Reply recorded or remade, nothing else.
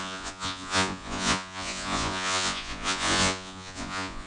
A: remade